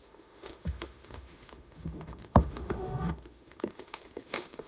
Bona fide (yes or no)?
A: no